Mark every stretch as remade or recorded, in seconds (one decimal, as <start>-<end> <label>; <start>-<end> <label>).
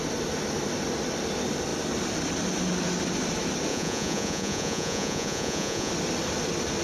0.0-3.7 recorded; 3.7-5.9 remade; 5.9-6.8 recorded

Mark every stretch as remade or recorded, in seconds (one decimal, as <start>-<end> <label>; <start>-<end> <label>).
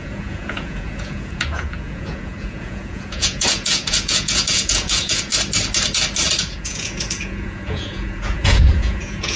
0.0-5.3 remade; 5.3-6.5 recorded; 6.5-9.4 remade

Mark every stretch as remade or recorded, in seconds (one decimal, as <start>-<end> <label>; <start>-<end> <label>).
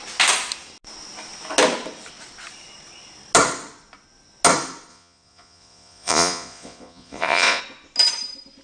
0.0-4.9 recorded; 4.9-7.6 remade; 7.6-8.6 recorded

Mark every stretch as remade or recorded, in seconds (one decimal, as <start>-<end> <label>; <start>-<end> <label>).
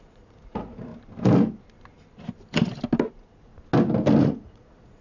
0.0-0.9 remade; 0.9-3.1 recorded; 3.1-3.5 remade; 3.5-4.2 recorded; 4.2-5.0 remade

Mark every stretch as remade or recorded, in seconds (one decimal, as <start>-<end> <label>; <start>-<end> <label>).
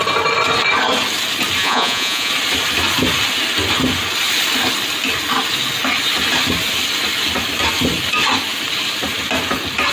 0.0-1.6 recorded; 1.6-2.3 remade; 2.3-9.9 recorded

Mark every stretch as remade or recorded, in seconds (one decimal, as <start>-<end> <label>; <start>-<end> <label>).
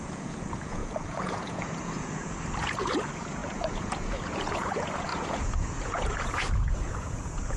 0.0-7.6 remade